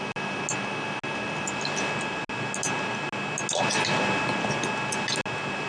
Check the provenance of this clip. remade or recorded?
recorded